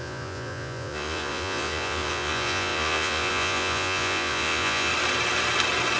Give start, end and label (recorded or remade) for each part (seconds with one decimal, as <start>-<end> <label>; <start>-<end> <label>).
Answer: 0.0-4.9 remade; 4.9-6.0 recorded